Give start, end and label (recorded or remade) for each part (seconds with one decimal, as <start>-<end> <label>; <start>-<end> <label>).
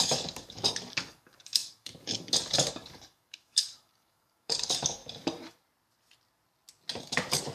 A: 0.0-5.0 remade; 5.0-7.0 recorded; 7.0-7.5 remade